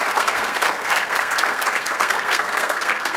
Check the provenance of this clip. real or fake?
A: fake